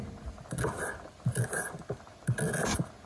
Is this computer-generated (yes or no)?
no